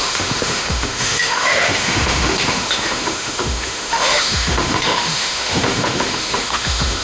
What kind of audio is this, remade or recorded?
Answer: remade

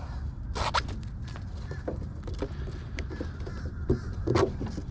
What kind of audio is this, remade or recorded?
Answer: recorded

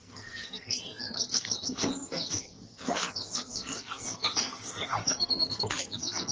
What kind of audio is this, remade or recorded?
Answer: remade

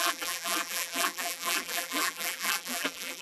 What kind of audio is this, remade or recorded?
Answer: remade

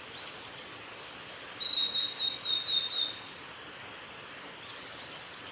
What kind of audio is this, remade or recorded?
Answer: recorded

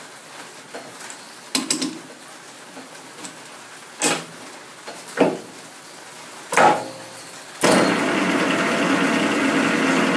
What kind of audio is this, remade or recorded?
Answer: recorded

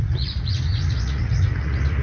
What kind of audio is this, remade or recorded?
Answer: remade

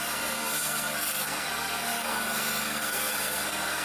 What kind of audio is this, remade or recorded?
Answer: remade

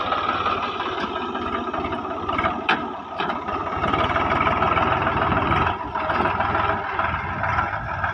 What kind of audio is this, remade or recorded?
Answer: recorded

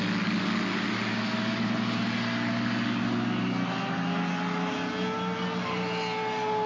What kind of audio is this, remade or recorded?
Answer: recorded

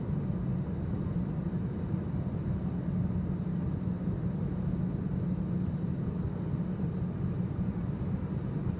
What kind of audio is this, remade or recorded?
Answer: recorded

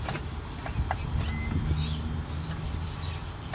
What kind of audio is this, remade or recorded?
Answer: recorded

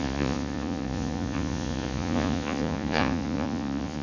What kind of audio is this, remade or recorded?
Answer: remade